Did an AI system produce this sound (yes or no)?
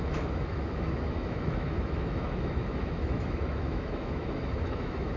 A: yes